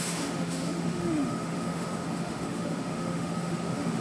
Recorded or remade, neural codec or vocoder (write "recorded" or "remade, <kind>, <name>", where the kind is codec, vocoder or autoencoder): remade, autoencoder, DAC-VAE